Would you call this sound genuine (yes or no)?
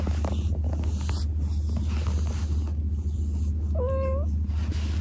yes